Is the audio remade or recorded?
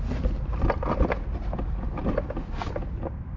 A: recorded